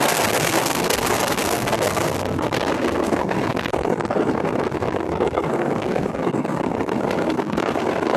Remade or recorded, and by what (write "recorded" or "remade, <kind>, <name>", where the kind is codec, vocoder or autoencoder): remade, codec, SNAC